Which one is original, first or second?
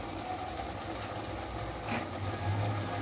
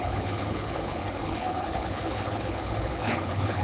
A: first